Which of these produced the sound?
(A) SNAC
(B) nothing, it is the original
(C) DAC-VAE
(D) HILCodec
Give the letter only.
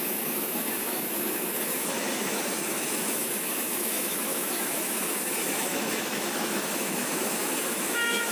C